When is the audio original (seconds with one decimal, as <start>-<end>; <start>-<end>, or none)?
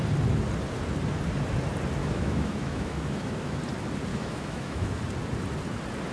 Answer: 0.0-2.0; 3.6-4.1; 5.0-6.1